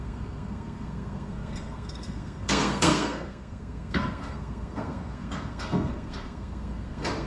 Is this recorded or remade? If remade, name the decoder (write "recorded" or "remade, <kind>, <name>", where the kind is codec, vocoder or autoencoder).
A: remade, codec, SNAC